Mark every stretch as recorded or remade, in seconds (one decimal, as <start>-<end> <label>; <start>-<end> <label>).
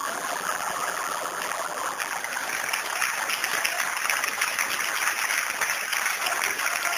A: 0.0-2.2 remade; 2.2-7.0 recorded